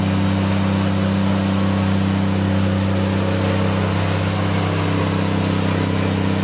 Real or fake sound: real